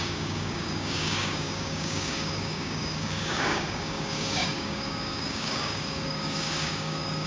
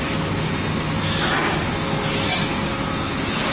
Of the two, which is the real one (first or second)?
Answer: second